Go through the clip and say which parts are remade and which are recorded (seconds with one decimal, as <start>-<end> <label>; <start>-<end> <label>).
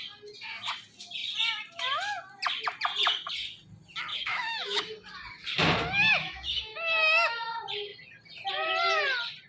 0.0-4.1 recorded; 4.1-4.8 remade; 4.8-6.1 recorded; 6.1-7.5 remade; 7.5-9.5 recorded